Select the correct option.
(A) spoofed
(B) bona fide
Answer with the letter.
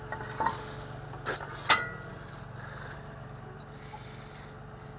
B